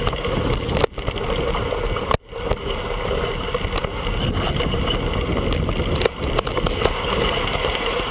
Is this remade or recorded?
recorded